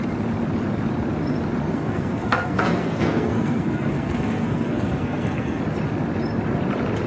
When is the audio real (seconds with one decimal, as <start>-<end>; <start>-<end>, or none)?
0.0-1.7; 5.6-7.1